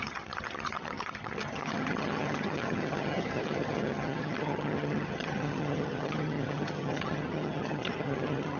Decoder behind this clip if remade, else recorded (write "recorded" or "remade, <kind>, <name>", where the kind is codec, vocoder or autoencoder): remade, vocoder, HiFi-GAN